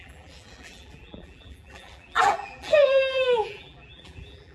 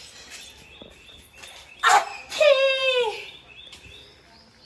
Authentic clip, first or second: second